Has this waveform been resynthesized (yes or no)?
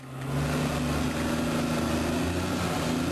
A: no